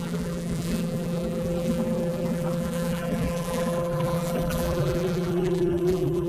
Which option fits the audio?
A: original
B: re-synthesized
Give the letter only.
B